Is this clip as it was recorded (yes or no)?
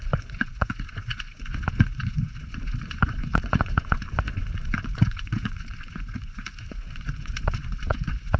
no